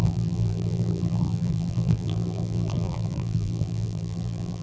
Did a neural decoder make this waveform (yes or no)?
yes